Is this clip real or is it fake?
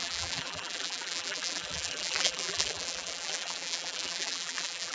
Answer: fake